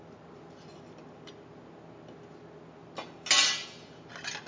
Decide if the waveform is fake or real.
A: real